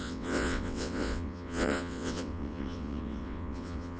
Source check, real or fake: fake